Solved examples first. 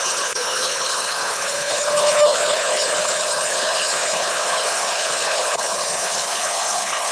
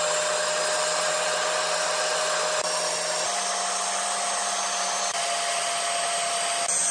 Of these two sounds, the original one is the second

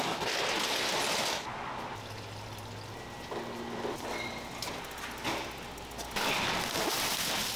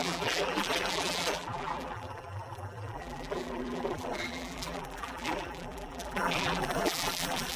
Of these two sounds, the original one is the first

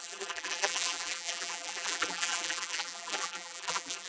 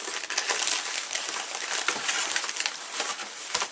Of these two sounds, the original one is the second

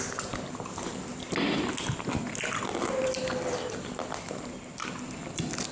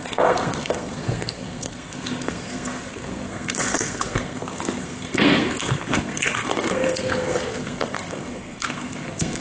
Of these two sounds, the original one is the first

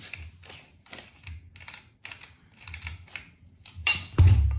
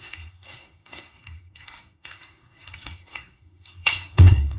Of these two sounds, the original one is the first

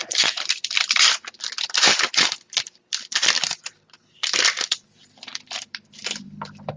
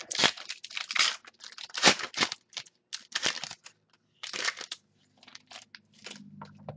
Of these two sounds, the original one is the second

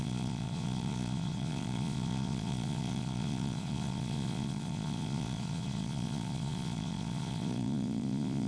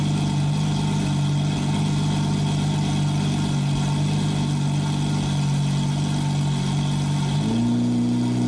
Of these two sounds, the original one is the second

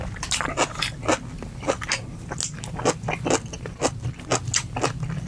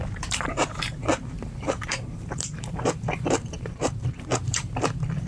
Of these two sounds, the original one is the first